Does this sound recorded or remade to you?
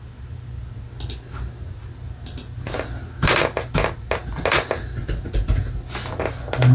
recorded